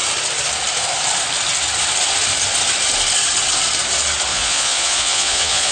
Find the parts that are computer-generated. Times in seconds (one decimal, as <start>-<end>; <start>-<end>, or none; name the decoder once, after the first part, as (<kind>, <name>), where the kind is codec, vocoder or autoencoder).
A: 4.3-5.7 (vocoder, Vocos)